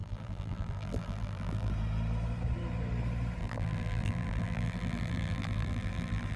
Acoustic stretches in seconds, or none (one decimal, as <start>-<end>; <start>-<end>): 1.7-3.4